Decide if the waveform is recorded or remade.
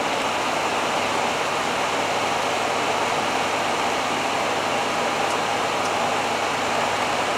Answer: recorded